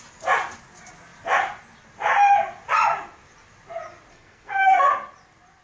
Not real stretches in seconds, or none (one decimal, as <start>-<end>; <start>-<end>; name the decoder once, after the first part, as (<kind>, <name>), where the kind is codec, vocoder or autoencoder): 4.1-4.9 (codec, SNAC)